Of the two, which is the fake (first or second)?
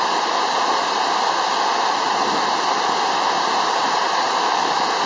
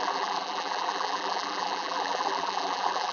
second